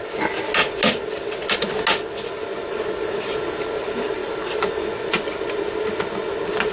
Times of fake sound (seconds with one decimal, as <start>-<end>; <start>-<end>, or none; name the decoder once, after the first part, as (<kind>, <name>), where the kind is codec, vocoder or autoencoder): none